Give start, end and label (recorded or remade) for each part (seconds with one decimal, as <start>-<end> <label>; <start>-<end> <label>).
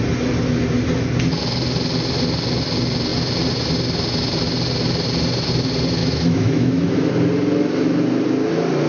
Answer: 0.0-6.0 recorded; 6.0-7.1 remade; 7.1-8.9 recorded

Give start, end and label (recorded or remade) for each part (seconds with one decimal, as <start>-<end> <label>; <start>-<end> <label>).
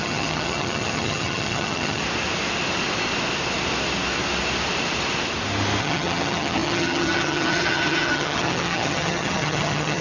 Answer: 0.0-2.0 remade; 2.0-5.8 recorded; 5.8-10.0 remade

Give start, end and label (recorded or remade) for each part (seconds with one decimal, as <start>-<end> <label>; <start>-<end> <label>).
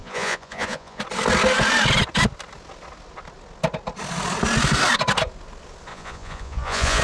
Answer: 0.0-1.0 remade; 1.0-5.9 recorded; 5.9-7.0 remade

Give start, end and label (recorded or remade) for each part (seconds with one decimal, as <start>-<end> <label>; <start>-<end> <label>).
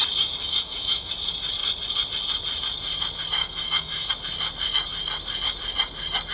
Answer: 0.0-0.4 recorded; 0.4-1.1 remade; 1.1-3.4 recorded; 3.4-4.1 remade; 4.1-6.3 recorded